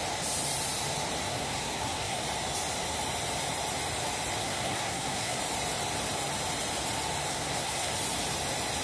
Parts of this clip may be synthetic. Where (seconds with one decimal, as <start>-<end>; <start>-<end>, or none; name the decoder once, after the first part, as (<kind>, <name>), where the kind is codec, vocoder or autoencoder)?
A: 1.3-2.2 (codec, SNAC); 4.4-5.4; 7.3-7.9